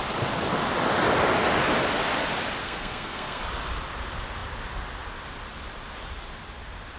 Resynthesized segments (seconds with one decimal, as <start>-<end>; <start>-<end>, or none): 2.6-3.4